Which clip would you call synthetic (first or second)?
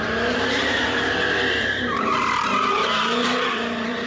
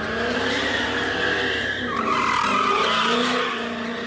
first